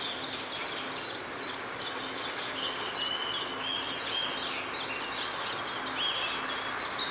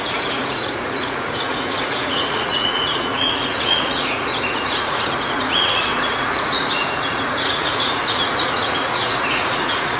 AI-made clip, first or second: second